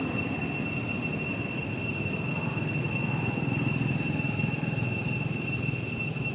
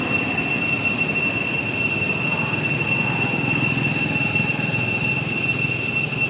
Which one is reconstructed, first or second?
first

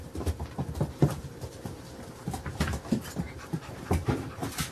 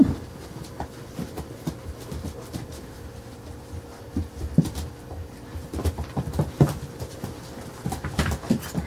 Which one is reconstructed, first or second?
first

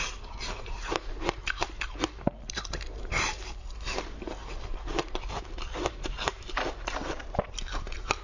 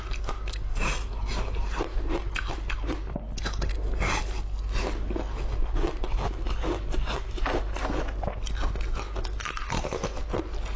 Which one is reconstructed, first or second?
first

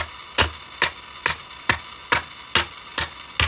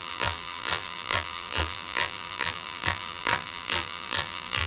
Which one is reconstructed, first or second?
second